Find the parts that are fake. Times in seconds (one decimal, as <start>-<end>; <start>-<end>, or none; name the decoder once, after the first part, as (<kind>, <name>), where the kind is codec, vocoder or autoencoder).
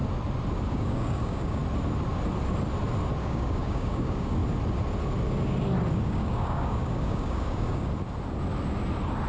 0.7-1.6 (codec, DAC); 3.2-4.4; 5.9-7.9